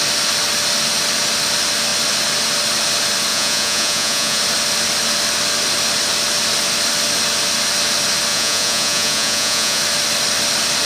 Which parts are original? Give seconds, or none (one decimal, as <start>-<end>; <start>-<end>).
0.0-3.3; 4.4-8.3; 9.8-10.8